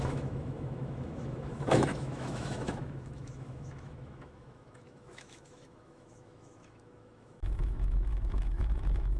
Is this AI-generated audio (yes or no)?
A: yes